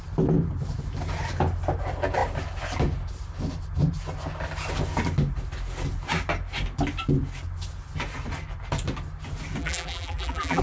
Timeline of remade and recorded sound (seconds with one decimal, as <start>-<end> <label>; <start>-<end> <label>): 0.0-9.6 recorded; 9.6-10.6 remade